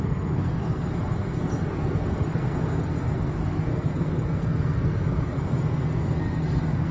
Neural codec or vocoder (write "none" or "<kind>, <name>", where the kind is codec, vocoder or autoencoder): codec, SNAC